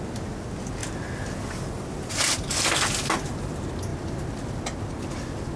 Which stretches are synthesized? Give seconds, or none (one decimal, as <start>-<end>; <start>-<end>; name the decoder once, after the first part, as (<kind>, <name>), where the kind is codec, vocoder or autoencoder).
none